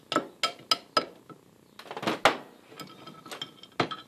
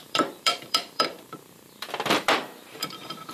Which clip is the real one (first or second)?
first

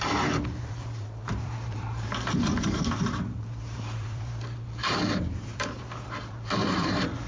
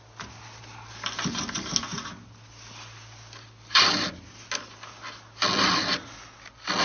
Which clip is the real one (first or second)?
second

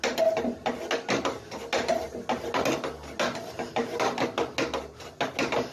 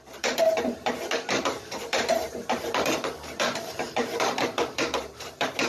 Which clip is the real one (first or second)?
first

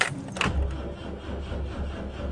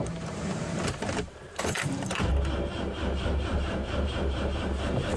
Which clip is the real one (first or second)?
first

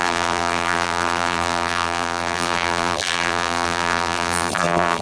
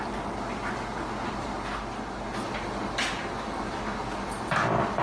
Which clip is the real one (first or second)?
second